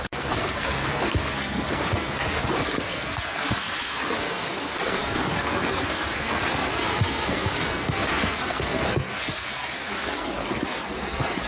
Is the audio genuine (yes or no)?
no